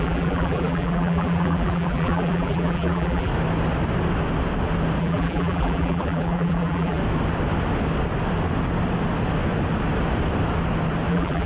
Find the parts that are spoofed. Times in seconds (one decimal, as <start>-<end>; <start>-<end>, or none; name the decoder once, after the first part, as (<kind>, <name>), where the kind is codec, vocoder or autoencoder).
0.0-3.3 (vocoder, BigVGAN v2); 5.0-7.0; 11.1-11.5